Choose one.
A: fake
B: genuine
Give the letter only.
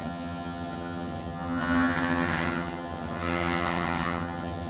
A